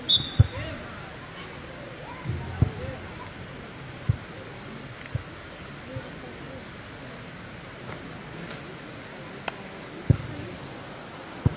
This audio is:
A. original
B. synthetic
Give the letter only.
A